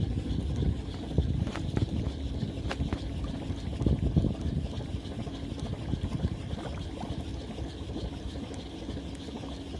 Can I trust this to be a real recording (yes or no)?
yes